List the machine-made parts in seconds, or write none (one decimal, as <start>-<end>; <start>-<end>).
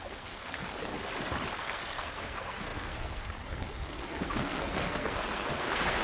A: 0.0-0.9; 1.5-6.0